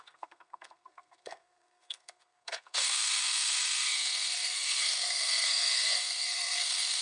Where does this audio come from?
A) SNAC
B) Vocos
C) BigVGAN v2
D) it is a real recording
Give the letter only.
A